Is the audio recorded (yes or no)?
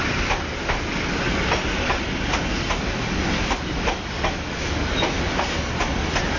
yes